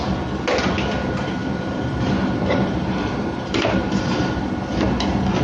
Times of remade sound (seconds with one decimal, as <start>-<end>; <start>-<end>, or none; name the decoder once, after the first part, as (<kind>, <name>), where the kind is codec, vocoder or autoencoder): 1.4-4.4 (vocoder, BigVGAN v2)